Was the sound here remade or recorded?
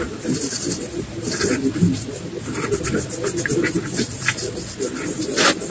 recorded